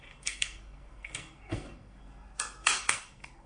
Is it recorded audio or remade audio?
remade